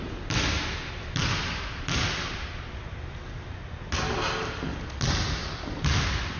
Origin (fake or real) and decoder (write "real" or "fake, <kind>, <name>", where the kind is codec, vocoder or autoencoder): real